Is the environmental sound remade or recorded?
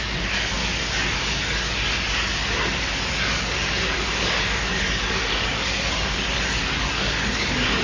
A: remade